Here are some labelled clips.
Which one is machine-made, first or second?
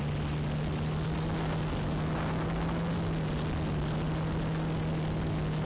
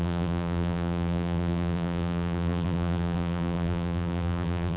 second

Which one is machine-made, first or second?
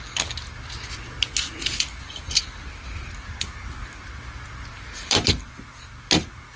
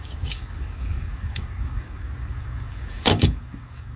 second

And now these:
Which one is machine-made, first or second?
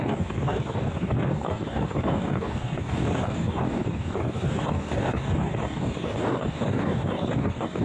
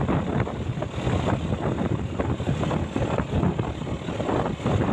first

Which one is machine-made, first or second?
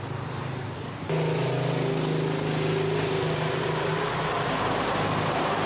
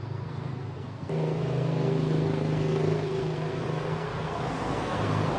second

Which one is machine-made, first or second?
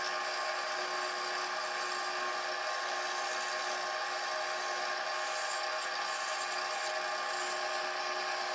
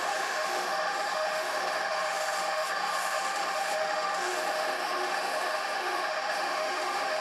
second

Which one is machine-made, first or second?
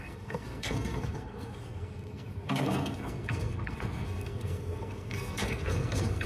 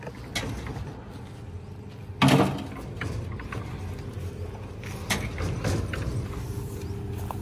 first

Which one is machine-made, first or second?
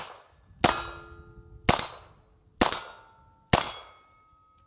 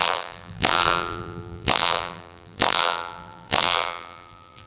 second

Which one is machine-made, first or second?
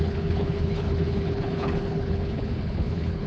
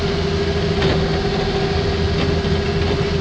first